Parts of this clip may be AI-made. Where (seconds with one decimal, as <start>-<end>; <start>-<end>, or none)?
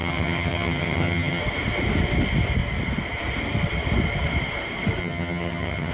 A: 0.0-1.4; 5.0-5.9